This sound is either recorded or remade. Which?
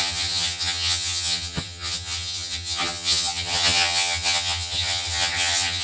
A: remade